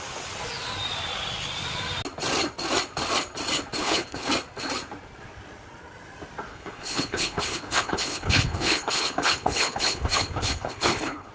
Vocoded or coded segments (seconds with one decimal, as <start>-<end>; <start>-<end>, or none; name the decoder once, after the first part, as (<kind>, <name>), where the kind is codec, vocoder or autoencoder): 3.8-4.3 (codec, HILCodec); 6.5-11.3